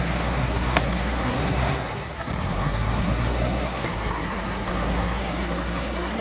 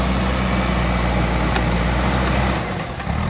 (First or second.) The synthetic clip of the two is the first